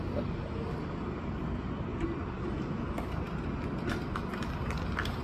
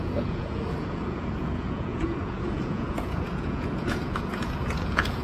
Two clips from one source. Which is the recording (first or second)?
first